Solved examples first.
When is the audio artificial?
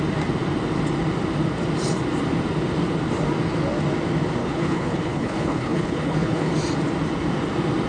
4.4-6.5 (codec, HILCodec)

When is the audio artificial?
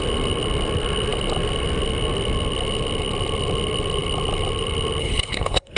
5.0-5.8 (codec, HILCodec)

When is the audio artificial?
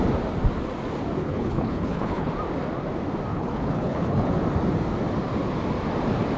1.2-2.3 (codec, HILCodec); 3.3-4.3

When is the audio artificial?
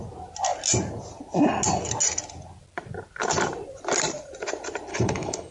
4.9-5.5 (codec, HILCodec)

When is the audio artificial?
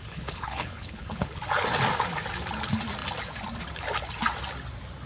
0.0-1.4 (codec, HILCodec)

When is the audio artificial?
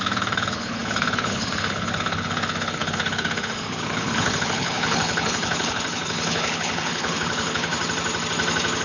0.0-7.7 (codec, HILCodec)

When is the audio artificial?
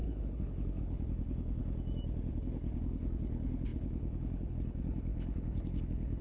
0.0-1.6 (codec, HILCodec); 2.3-6.2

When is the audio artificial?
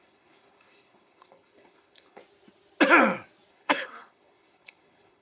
0.0-2.2 (codec, HILCodec); 3.5-5.2